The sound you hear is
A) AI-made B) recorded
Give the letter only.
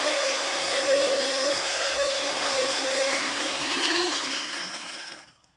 A